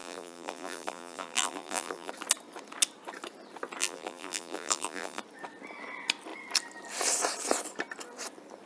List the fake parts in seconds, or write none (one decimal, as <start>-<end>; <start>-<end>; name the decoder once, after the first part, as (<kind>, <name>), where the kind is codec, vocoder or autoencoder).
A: 0.0-2.1 (vocoder, BigVGAN v2); 3.8-5.2